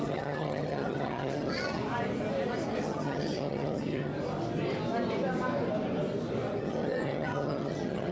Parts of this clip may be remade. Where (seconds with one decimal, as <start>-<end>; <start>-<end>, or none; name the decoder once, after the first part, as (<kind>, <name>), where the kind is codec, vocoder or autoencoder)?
0.0-1.8 (vocoder, HiFi-GAN); 2.8-4.1; 6.6-8.1